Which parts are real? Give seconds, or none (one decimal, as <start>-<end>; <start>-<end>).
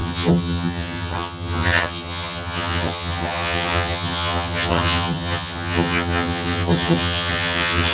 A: none